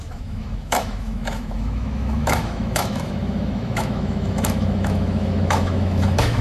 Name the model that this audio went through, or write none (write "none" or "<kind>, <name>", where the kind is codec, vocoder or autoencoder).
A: autoencoder, DAC-VAE